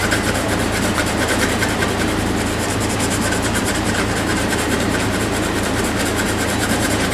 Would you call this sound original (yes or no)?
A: no